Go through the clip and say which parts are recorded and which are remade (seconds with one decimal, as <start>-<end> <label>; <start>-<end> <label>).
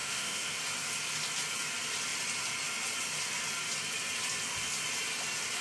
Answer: 0.0-0.6 remade; 0.6-5.6 recorded